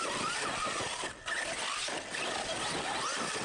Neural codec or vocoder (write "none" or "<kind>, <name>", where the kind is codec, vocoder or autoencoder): none